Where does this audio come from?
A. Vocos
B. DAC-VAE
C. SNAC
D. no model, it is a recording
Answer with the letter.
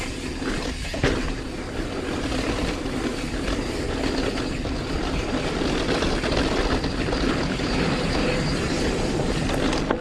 D